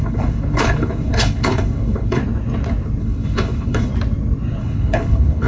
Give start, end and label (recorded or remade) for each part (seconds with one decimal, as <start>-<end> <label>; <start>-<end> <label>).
0.0-2.2 remade; 2.2-3.0 recorded; 3.0-3.9 remade; 3.9-4.6 recorded; 4.6-5.5 remade